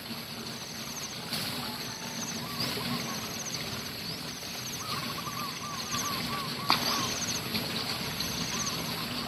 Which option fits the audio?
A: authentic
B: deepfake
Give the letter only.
A